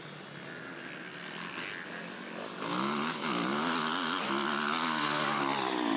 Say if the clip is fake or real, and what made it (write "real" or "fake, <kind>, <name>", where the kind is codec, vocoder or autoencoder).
real